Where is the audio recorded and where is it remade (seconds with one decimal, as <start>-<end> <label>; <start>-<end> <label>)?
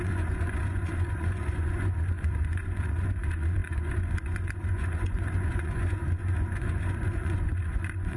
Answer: 0.0-8.2 remade